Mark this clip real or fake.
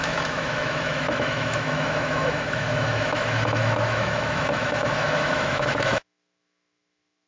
fake